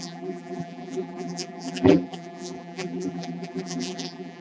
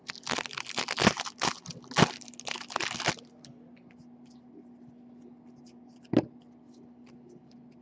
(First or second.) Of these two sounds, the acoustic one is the second